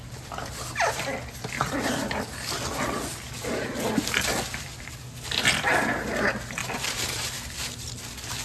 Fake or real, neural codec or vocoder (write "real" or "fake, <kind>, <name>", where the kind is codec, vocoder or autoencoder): real